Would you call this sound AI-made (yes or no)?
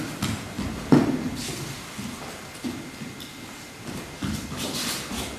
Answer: no